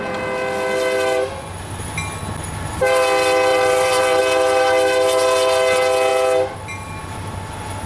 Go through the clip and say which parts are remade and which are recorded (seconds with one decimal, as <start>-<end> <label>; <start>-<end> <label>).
0.0-3.5 recorded; 3.5-4.2 remade; 4.2-7.9 recorded